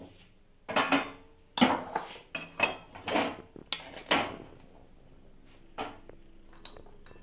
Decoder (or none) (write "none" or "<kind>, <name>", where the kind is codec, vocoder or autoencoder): none